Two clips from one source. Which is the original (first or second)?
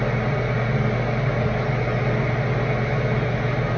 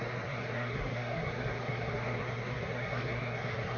first